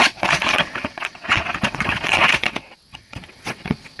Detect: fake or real fake